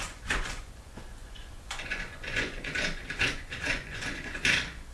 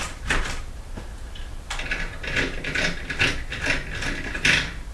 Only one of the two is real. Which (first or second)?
second